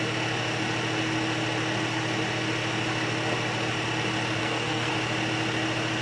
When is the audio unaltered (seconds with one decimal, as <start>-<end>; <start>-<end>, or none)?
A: 0.0-4.4; 4.9-6.0